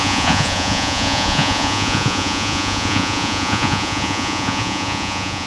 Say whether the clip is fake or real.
fake